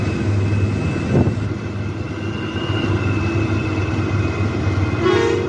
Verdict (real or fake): real